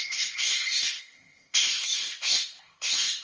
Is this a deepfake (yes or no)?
yes